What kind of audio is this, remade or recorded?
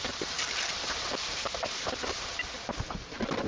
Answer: remade